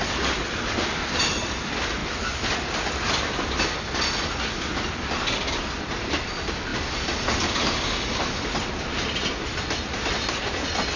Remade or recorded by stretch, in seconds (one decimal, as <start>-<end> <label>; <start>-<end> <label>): 0.0-11.0 recorded